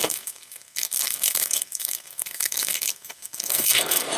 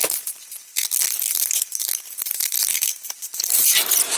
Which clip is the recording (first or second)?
second